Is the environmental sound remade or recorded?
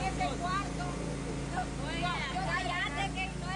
recorded